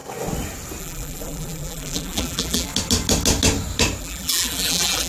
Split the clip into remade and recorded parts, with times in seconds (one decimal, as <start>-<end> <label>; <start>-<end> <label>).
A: 0.0-0.8 recorded; 0.8-2.7 remade; 2.7-4.0 recorded; 4.0-5.1 remade